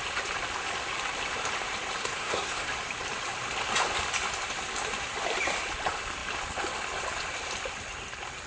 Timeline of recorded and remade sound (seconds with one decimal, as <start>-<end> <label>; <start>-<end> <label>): 0.0-2.0 recorded; 2.0-2.7 remade; 2.7-8.5 recorded